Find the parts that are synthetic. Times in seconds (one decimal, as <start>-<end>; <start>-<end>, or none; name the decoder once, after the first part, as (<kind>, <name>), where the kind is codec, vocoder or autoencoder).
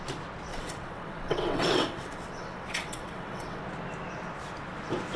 0.5-3.6 (vocoder, WaveNeXt)